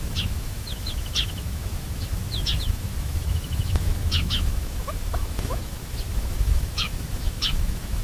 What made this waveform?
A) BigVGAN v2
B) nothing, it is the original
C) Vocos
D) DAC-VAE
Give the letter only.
D